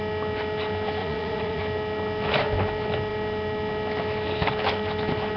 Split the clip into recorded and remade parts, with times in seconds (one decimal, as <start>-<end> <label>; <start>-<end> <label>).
0.0-1.0 recorded; 1.0-1.6 remade; 1.6-5.4 recorded